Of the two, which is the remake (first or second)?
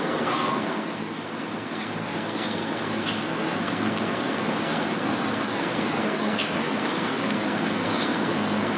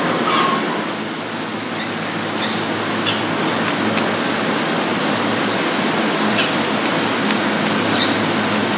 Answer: first